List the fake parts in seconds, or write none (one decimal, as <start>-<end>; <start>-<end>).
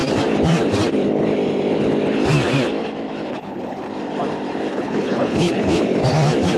3.3-3.9; 4.7-5.8